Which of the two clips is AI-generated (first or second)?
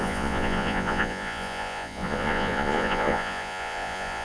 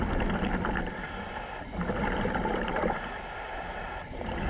first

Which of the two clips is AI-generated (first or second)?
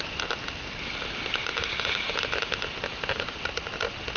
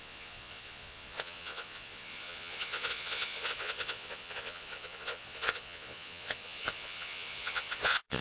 second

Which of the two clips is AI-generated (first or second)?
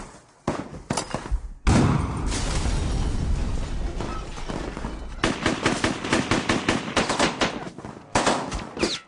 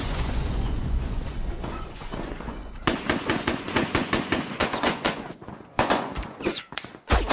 second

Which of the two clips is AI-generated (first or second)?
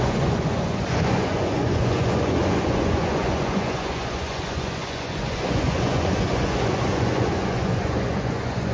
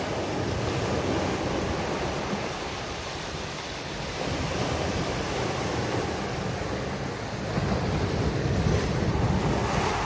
first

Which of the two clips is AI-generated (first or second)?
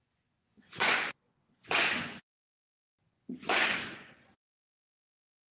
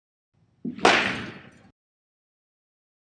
first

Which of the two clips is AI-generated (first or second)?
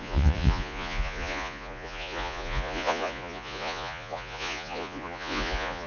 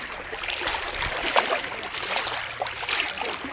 first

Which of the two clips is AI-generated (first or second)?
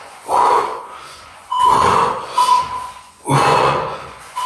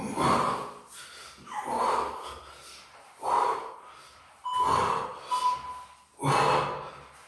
first